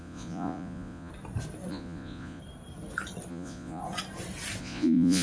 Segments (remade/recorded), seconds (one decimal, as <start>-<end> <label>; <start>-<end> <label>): 0.0-1.1 remade; 1.1-1.7 recorded; 1.7-2.4 remade; 2.4-3.3 recorded; 3.3-3.8 remade; 3.8-4.6 recorded; 4.6-5.2 remade